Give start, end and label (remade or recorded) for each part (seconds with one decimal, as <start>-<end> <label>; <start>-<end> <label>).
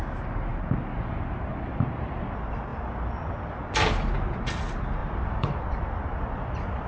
0.0-5.0 recorded; 5.0-5.6 remade; 5.6-6.9 recorded